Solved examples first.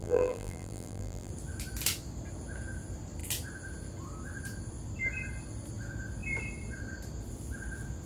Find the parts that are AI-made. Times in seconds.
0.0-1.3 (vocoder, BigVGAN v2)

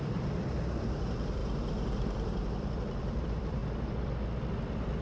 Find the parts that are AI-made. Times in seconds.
0.0-1.4 (vocoder, BigVGAN v2); 1.9-3.6

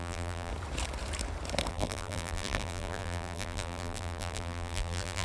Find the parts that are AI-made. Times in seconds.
0.0-0.5 (vocoder, BigVGAN v2); 1.7-5.2

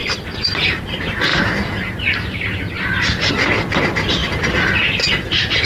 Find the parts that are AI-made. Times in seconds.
0.0-0.8 (vocoder, BigVGAN v2); 1.3-3.3

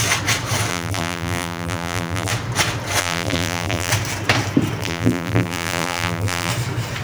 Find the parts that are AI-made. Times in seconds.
0.7-2.3 (vocoder, BigVGAN v2); 3.0-3.9; 4.8-6.5

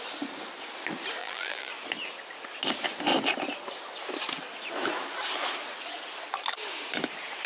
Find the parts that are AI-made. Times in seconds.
1.2-1.7 (vocoder, BigVGAN v2)